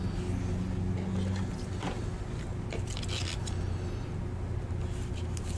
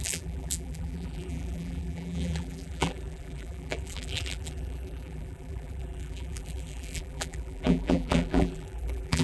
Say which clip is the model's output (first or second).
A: second